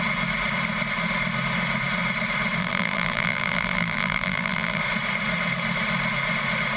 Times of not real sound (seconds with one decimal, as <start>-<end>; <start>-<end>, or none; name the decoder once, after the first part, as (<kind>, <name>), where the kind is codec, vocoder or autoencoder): 2.6-4.8 (vocoder, BigVGAN v2)